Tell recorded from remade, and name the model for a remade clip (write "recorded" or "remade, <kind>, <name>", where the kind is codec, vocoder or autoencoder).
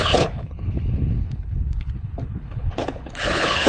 remade, codec, HILCodec